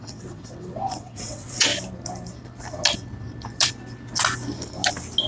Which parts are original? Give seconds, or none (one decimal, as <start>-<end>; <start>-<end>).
1.7-5.3